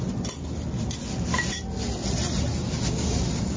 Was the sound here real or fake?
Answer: real